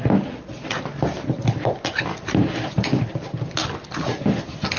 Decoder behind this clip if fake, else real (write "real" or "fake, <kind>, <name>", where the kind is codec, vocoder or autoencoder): real